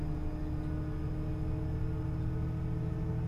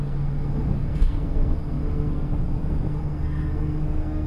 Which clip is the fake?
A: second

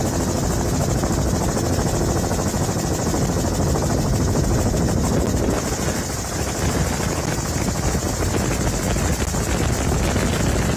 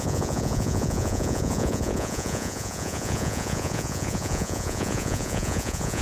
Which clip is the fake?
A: second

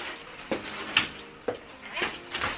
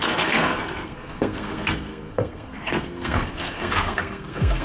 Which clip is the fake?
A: second